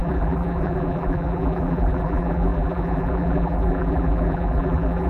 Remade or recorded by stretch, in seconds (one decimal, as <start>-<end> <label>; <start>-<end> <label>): 0.0-5.1 remade